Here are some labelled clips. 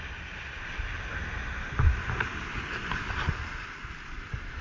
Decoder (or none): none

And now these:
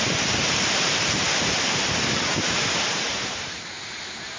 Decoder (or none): vocoder, BigVGAN v2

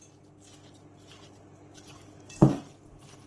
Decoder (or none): none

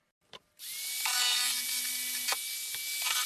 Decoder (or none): none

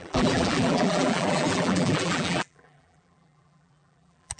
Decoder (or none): vocoder, BigVGAN v2